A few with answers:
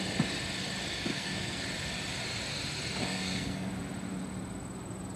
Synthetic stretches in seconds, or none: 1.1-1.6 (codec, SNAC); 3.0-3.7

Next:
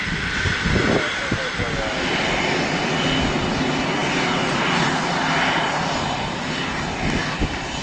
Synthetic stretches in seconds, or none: none

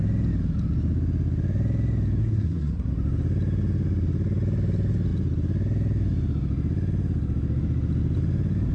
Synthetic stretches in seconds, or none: 2.2-2.9 (codec, SNAC)

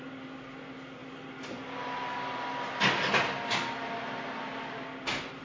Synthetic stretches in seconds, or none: none

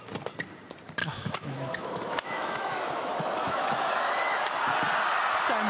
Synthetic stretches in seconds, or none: 1.0-4.4 (autoencoder, DAC-VAE)

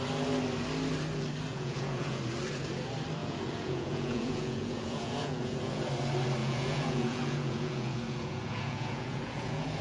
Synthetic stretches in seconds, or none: 1.5-2.2 (vocoder, Vocos); 3.2-5.9; 6.4-9.8

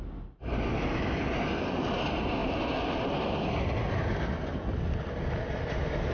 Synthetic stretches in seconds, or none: 0.7-1.2 (autoencoder, DAC-VAE)

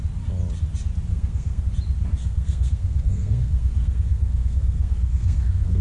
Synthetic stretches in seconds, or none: 1.1-1.6 (codec, SNAC); 2.2-5.8